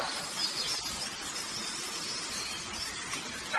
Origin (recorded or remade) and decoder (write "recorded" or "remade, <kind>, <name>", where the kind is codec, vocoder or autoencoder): recorded